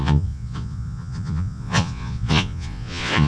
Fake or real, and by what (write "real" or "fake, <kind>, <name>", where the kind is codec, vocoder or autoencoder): fake, vocoder, Vocos